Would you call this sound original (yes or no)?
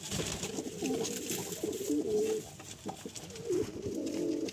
yes